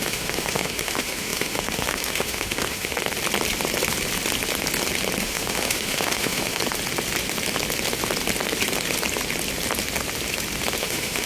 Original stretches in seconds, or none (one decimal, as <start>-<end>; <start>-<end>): 2.9-5.2; 6.6-10.8